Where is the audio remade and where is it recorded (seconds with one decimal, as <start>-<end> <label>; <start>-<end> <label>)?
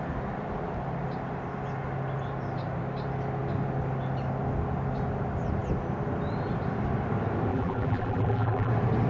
0.0-7.5 recorded; 7.5-8.7 remade; 8.7-9.1 recorded